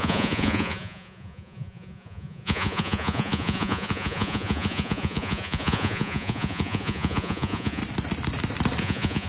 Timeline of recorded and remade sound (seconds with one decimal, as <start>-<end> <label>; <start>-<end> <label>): 0.0-7.8 remade; 7.8-8.8 recorded; 8.8-9.3 remade